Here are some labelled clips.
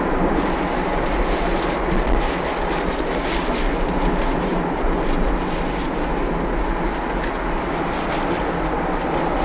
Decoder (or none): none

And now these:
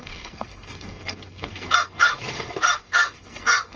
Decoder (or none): codec, SNAC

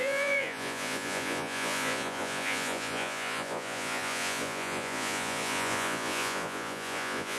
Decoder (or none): vocoder, Vocos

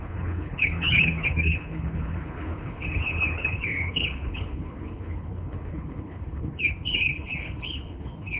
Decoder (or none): codec, HILCodec